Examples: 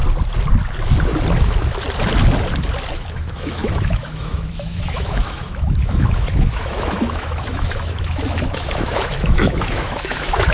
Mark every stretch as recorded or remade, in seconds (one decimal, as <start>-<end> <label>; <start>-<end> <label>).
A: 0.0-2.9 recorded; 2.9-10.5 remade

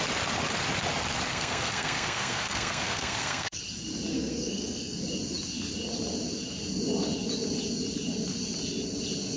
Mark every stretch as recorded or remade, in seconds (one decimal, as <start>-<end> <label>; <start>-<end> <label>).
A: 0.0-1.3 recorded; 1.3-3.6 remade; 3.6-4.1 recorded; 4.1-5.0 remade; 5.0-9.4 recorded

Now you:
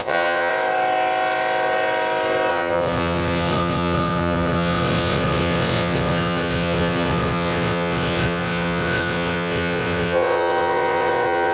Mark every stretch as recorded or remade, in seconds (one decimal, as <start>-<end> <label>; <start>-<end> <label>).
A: 0.0-0.5 remade; 0.5-2.5 recorded; 2.5-11.5 remade